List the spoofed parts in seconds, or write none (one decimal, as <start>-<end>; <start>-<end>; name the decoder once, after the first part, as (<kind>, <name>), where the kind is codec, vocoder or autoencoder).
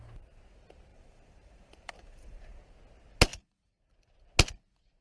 0.9-2.6 (vocoder, BigVGAN v2); 3.3-3.9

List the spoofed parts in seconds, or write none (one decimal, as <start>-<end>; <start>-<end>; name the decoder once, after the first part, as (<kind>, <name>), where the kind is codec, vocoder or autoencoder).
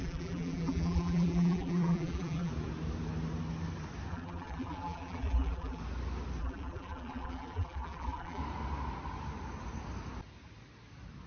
0.0-2.5 (vocoder, BigVGAN v2); 4.1-5.8; 6.4-8.4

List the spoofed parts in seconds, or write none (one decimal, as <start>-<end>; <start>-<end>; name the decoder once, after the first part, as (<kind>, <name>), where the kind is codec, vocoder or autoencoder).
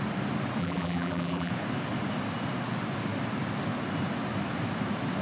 0.6-1.5 (vocoder, BigVGAN v2)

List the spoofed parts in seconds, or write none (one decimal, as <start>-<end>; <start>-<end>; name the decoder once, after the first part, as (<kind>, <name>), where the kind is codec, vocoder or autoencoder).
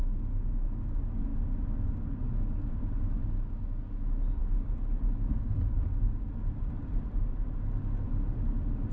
4.4-7.2 (vocoder, BigVGAN v2)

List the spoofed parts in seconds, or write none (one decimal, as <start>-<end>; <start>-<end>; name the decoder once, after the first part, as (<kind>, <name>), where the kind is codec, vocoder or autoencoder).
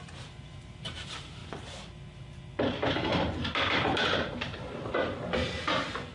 0.0-6.1 (vocoder, BigVGAN v2)